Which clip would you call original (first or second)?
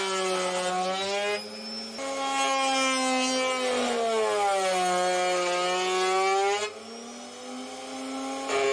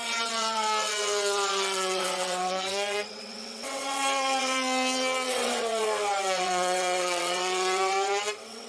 first